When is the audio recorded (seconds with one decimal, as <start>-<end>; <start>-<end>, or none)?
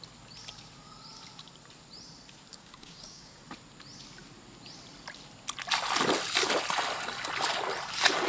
0.0-2.5; 3.4-8.3